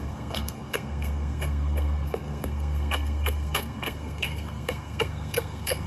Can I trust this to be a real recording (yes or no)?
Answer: no